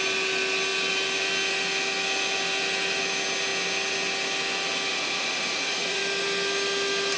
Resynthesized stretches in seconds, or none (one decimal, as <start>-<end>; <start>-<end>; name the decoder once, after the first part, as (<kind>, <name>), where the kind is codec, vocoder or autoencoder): 4.9-6.0 (vocoder, Vocos)